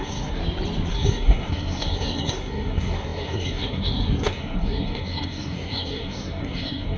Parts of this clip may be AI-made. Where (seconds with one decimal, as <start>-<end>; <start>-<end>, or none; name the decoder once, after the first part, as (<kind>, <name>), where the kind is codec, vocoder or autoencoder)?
0.0-0.4 (codec, SNAC); 0.9-7.0